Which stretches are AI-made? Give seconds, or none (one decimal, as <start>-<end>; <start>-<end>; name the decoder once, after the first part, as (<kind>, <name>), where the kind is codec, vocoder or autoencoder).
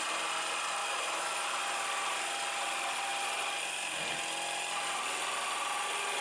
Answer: 0.8-1.6 (autoencoder, DAC-VAE)